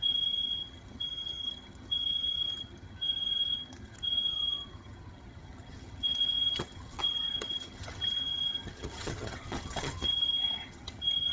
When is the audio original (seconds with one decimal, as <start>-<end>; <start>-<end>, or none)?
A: none